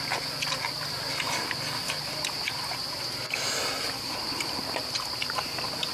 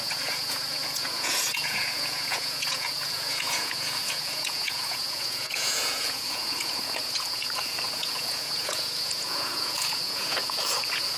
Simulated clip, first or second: second